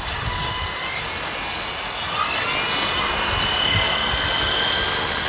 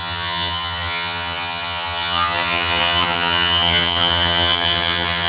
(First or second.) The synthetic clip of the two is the second